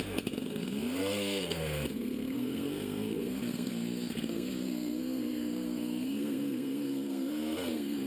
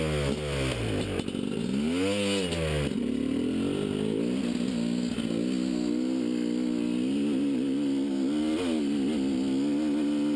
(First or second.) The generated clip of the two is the first